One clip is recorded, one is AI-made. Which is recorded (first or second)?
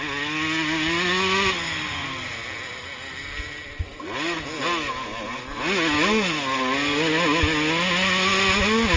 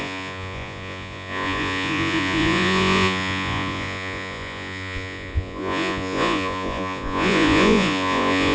first